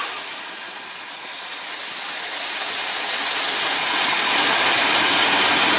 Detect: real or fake real